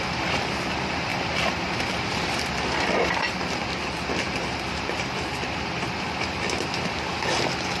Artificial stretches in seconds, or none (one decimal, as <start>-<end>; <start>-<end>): 1.1-5.8